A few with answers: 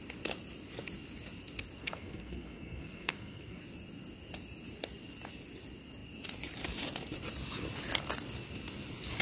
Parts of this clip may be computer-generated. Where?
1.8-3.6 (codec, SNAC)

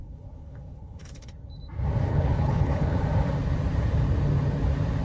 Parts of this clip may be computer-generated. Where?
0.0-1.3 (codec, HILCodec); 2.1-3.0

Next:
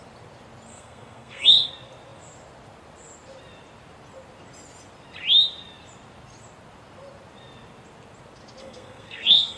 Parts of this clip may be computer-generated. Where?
0.7-1.7 (codec, SNAC); 8.6-9.6

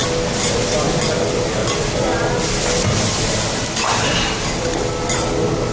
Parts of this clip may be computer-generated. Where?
none

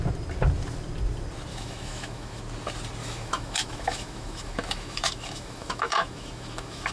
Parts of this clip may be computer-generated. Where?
1.5-2.4 (autoencoder, DAC-VAE); 3.0-6.9

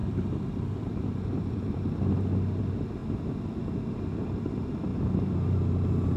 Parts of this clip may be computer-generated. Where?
0.0-3.0 (vocoder, BigVGAN v2); 3.9-4.9